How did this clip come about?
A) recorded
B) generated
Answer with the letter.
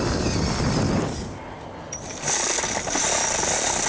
A